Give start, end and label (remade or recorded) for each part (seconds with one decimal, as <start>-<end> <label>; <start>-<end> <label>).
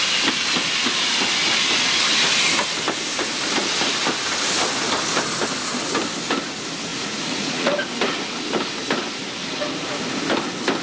0.0-6.9 recorded; 6.9-7.7 remade; 7.7-10.8 recorded